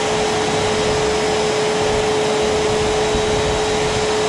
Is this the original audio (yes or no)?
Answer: yes